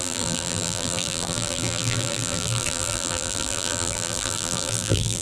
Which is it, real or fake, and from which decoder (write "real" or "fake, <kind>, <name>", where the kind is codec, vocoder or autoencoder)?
fake, vocoder, BigVGAN v2